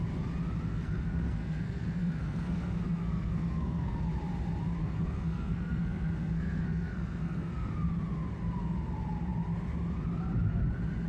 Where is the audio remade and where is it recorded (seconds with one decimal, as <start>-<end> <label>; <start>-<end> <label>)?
0.0-0.7 recorded; 0.7-4.0 remade; 4.0-4.8 recorded; 4.8-7.7 remade; 7.7-11.1 recorded